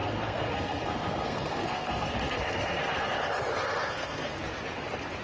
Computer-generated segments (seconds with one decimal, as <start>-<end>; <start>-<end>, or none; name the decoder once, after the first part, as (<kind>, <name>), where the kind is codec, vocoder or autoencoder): 0.0-3.1 (codec, SNAC); 3.6-4.4